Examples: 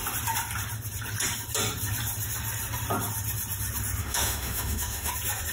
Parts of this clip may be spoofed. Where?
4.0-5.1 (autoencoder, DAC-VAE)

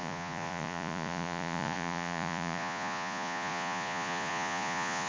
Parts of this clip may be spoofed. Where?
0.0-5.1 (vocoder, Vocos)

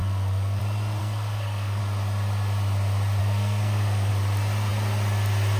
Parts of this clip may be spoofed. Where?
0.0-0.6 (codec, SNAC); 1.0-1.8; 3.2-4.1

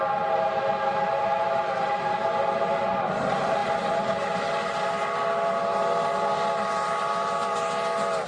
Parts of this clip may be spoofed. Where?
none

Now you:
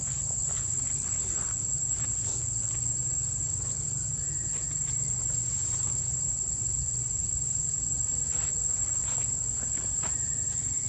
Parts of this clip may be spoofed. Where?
0.6-1.6 (vocoder, BigVGAN v2); 3.0-9.0; 9.6-10.9

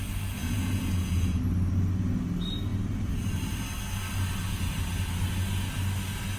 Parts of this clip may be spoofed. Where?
0.4-1.4 (vocoder, Vocos)